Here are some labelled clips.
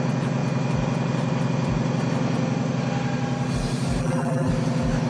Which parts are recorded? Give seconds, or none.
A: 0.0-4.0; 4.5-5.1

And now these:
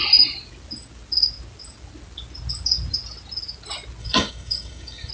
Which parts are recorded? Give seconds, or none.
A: 0.0-4.0

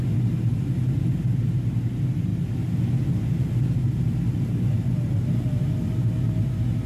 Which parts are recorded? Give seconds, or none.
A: 0.0-6.9

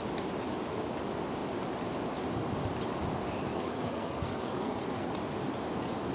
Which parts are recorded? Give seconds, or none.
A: 0.0-3.5; 5.1-6.1

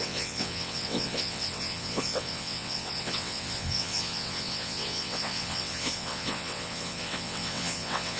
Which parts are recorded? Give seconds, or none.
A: none